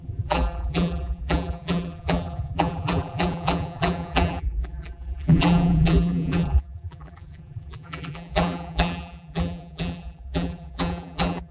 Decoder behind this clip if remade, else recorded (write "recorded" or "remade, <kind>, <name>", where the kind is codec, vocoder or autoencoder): remade, vocoder, BigVGAN v2